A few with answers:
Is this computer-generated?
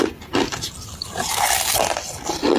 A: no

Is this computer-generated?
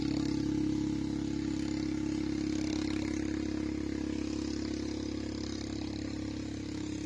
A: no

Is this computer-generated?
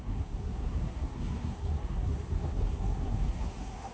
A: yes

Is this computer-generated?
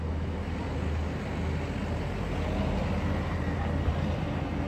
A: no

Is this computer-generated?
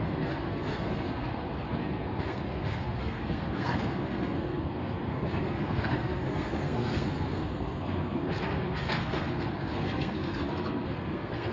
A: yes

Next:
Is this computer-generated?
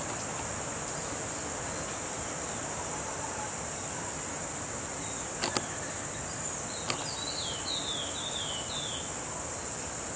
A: no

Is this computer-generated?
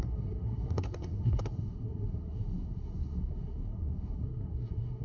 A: yes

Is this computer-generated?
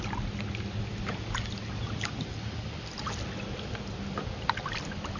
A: no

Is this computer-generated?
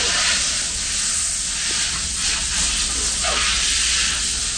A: no